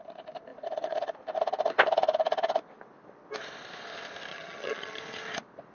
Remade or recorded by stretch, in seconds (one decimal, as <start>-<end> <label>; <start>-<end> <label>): 0.0-4.3 recorded; 4.3-5.0 remade; 5.0-5.7 recorded